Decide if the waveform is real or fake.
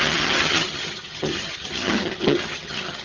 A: fake